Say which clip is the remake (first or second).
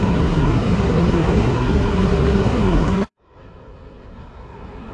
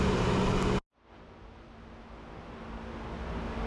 first